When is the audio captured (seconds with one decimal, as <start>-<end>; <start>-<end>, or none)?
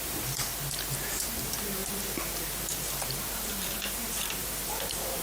0.5-1.0